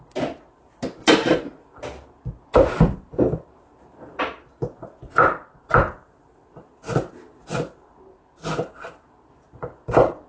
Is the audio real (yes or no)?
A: yes